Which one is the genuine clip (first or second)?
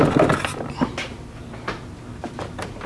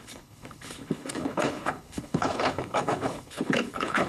first